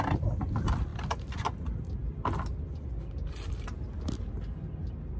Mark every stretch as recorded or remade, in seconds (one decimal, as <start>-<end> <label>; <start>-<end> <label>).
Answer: 0.0-5.2 recorded